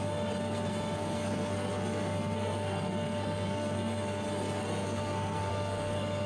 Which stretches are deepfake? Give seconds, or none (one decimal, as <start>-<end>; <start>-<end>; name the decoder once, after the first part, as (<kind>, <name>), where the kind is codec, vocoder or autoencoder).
0.0-6.3 (codec, SNAC)

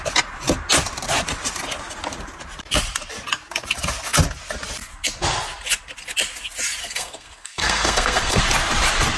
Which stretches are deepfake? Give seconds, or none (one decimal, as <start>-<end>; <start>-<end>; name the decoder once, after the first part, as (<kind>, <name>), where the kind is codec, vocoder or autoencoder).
6.8-8.4 (codec, SNAC)

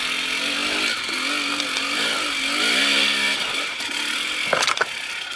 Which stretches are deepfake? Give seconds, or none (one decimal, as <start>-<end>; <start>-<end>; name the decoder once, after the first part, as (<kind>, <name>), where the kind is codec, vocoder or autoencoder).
none

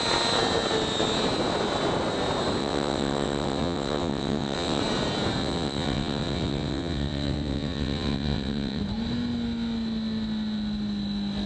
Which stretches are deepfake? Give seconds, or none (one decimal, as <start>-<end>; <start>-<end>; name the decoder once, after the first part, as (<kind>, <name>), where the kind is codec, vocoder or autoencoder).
2.6-4.8 (vocoder, WaveNeXt); 5.4-8.8

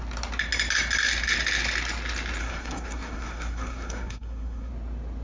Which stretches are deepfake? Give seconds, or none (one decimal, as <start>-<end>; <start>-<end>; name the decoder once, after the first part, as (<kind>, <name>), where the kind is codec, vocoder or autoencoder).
2.4-4.7 (codec, SNAC)